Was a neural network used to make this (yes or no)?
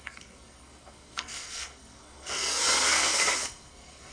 yes